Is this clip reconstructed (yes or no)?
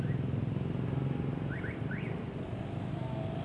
no